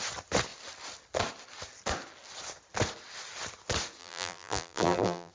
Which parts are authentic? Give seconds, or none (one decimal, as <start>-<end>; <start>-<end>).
0.0-4.0

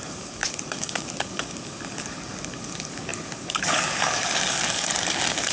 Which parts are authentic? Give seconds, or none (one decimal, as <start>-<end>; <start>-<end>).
none